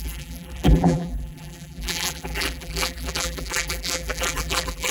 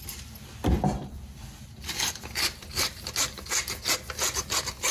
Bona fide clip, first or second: second